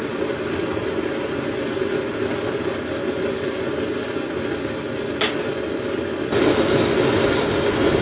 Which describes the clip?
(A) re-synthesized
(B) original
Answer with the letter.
B